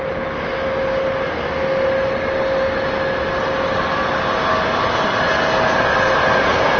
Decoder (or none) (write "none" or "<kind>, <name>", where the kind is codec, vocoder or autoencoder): none